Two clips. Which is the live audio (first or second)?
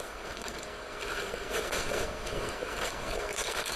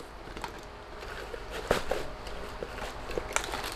second